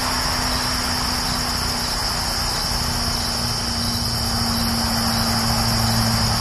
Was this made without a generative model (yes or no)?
yes